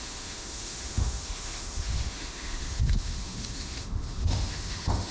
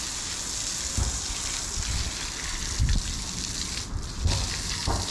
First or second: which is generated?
first